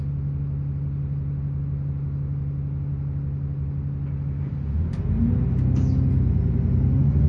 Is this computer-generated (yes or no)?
no